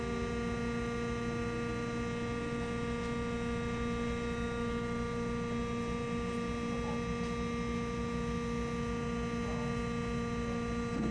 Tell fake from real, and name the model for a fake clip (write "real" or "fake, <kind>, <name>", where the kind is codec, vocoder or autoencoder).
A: real